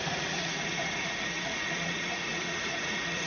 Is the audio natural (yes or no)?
no